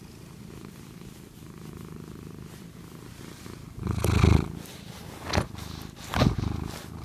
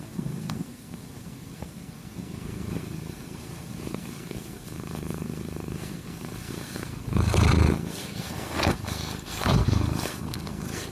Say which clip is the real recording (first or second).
first